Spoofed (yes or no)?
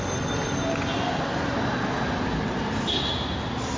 no